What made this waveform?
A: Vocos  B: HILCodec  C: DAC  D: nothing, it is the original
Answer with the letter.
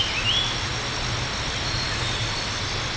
D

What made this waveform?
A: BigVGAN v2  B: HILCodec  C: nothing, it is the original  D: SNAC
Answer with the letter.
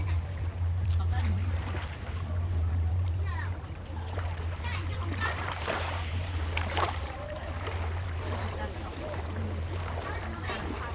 A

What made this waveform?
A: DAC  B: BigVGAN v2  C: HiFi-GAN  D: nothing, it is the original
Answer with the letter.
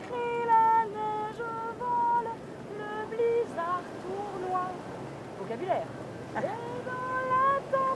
D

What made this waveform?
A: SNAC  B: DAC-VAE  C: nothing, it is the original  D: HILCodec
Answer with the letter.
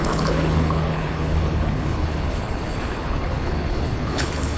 D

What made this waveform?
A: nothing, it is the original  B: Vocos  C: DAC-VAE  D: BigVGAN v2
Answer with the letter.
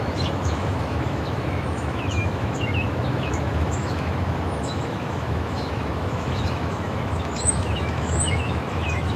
C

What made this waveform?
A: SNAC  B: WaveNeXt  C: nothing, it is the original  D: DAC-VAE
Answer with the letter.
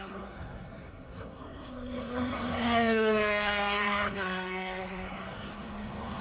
A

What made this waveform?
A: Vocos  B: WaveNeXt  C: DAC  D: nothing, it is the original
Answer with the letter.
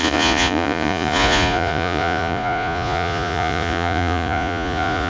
A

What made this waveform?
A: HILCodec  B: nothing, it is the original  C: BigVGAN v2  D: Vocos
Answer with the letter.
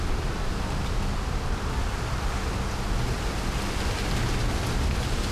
B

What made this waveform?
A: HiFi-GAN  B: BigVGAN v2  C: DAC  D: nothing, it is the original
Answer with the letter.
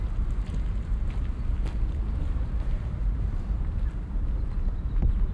D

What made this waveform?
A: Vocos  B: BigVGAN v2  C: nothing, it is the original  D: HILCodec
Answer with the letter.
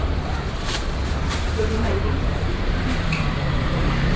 B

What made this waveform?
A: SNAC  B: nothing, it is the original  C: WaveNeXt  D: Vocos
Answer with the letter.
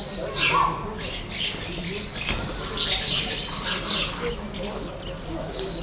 B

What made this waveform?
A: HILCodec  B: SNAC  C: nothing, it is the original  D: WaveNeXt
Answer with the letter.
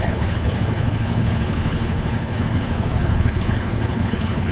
A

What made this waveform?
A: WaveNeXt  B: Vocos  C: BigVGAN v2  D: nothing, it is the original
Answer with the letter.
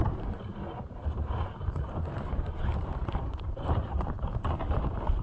C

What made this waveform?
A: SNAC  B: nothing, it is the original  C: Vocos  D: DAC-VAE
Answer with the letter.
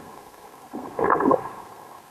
A